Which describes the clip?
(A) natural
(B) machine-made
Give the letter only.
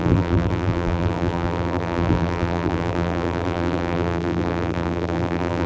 B